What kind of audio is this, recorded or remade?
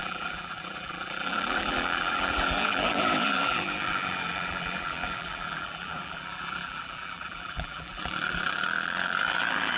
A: remade